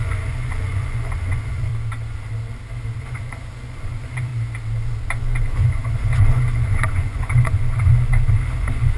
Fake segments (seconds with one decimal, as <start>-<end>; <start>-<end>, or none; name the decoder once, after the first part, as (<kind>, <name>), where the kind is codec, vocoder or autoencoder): 0.0-1.7 (vocoder, Vocos); 3.0-4.3; 5.2-9.0